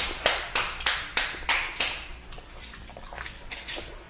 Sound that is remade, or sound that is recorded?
recorded